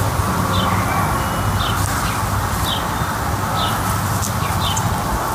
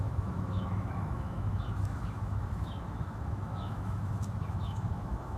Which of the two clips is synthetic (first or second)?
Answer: second